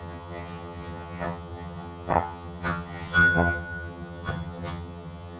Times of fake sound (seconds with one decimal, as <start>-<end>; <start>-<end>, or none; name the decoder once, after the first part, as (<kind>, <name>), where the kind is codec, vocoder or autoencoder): 0.0-5.4 (vocoder, HiFi-GAN)